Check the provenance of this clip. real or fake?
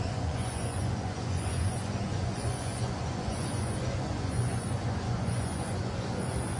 fake